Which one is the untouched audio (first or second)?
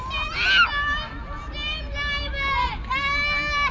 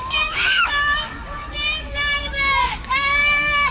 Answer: first